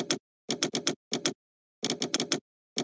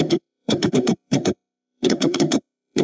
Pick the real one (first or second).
first